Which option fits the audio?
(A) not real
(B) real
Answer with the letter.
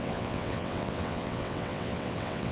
A